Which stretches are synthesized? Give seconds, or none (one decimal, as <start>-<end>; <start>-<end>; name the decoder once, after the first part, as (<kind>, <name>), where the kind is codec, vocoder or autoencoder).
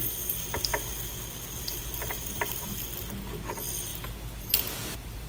2.0-2.7 (vocoder, BigVGAN v2)